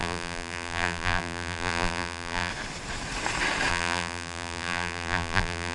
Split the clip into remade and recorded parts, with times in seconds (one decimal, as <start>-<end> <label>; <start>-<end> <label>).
0.0-2.5 remade; 2.5-3.7 recorded; 3.7-5.7 remade